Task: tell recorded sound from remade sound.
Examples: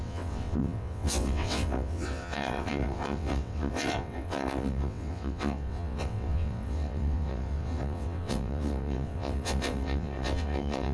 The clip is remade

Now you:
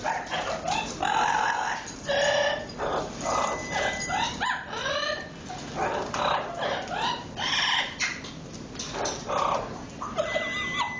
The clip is recorded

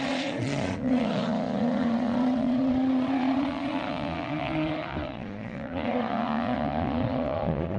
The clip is remade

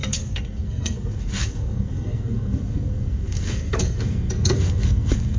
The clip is remade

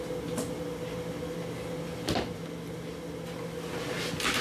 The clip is recorded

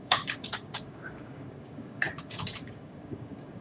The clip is remade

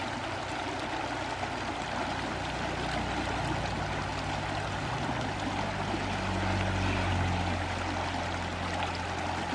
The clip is recorded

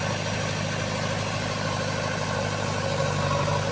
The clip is recorded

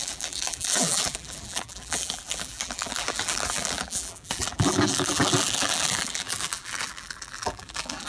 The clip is remade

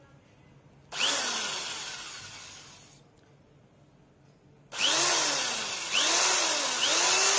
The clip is recorded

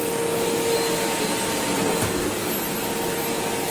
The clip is recorded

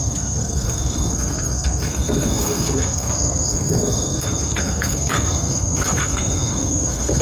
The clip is remade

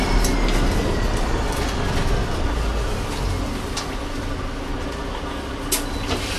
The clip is recorded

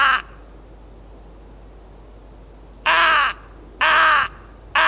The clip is recorded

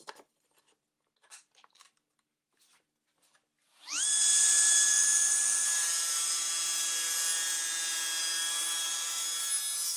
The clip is recorded